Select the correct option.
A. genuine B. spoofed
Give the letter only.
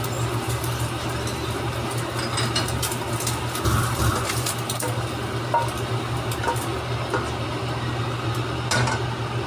A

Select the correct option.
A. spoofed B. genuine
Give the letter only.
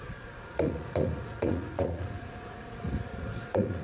A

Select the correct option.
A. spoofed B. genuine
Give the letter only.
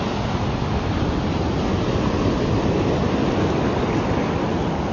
B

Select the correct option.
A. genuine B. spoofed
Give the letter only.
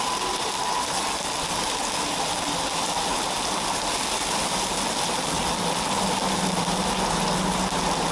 A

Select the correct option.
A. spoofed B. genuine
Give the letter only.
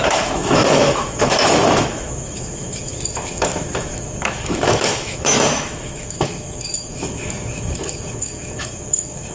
A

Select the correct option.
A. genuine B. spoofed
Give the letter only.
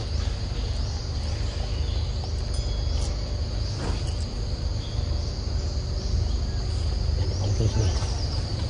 A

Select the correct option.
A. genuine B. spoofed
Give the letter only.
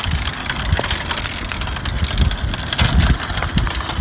A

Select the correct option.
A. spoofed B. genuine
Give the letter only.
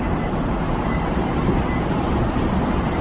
B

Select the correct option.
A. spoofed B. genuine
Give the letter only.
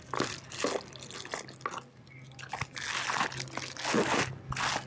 B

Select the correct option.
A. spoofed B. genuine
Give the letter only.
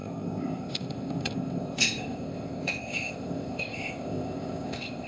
A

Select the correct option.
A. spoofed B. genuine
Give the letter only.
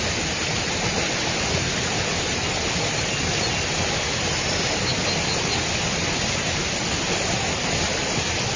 B